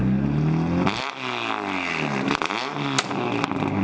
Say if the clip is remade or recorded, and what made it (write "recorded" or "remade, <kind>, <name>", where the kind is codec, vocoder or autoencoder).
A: recorded